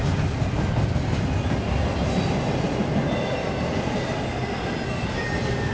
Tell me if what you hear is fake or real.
real